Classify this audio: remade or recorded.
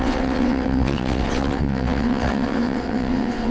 remade